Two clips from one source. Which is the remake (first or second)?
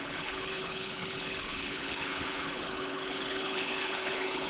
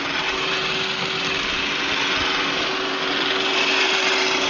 first